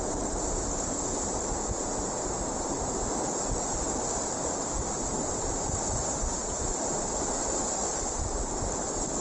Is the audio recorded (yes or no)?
yes